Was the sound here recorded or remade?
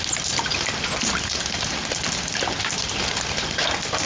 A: recorded